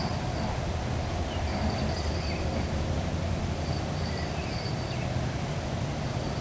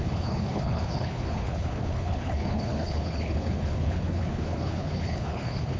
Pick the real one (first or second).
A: first